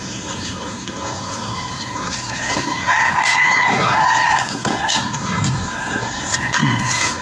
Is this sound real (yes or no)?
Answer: no